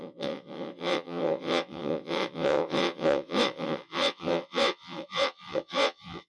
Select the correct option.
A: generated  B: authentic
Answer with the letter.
A